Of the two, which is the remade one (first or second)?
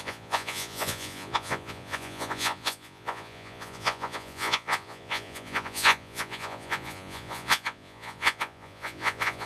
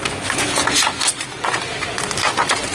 first